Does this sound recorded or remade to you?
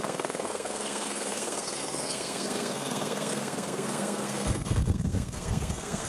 remade